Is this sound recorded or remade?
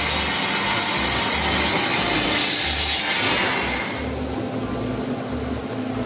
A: recorded